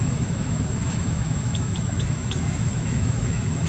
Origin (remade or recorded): remade